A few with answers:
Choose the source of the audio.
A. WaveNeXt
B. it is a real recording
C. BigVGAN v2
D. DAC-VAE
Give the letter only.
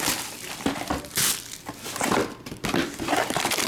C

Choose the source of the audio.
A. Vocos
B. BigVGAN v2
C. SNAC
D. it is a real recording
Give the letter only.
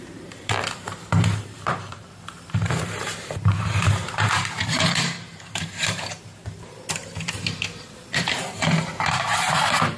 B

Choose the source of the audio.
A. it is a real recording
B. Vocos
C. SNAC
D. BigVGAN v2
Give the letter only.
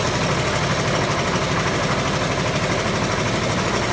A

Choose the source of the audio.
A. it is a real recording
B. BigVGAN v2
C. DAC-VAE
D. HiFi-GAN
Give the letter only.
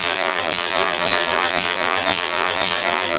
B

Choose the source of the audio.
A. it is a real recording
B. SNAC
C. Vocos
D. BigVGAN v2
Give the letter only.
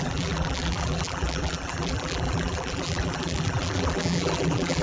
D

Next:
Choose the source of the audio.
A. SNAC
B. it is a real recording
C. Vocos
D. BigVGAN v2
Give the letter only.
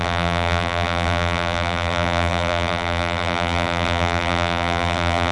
D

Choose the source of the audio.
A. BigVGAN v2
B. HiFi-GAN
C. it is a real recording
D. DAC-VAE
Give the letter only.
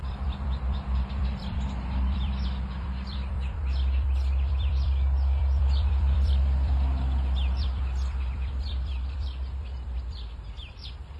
A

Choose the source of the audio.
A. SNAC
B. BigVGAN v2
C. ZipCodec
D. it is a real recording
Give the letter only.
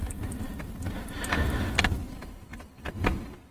B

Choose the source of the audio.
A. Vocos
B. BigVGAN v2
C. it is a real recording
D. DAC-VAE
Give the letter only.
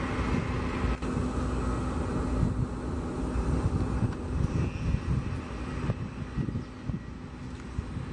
C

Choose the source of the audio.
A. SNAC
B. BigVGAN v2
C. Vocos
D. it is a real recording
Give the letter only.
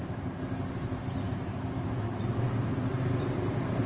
B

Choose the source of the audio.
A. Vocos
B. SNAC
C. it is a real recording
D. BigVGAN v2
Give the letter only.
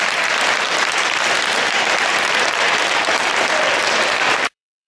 D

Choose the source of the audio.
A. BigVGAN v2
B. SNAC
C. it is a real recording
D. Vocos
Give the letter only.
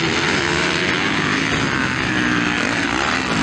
C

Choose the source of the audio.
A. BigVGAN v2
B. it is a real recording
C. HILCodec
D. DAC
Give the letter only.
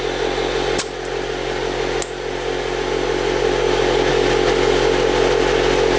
B